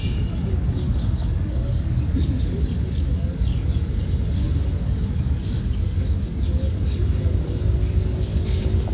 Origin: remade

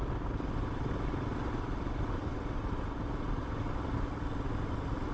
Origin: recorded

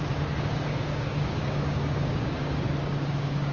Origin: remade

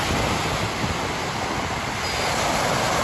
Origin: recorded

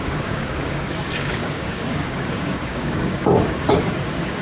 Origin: remade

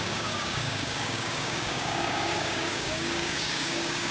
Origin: remade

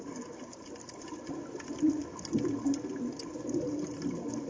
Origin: recorded